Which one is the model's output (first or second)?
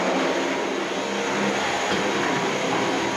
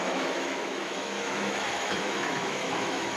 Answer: second